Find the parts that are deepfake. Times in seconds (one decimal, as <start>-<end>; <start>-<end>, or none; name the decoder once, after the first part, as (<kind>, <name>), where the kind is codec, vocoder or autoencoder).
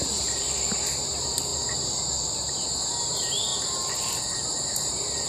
0.0-3.5 (vocoder, BigVGAN v2); 4.6-5.3